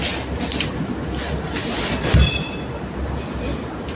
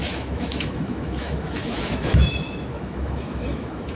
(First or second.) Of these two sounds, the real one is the first